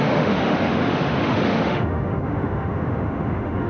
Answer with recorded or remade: remade